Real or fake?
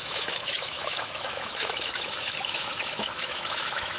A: fake